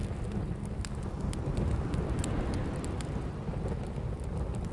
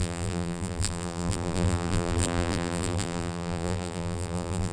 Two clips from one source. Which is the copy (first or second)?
second